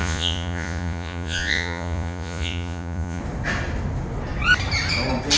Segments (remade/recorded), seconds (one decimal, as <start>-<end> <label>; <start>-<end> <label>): 0.0-3.2 remade; 3.2-5.4 recorded